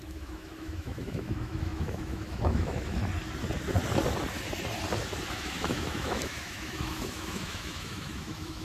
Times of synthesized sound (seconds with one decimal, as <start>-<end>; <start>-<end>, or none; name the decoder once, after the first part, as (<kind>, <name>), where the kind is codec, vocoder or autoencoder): 0.0-3.0 (autoencoder, DAC-VAE); 5.3-8.6